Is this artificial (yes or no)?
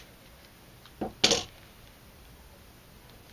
no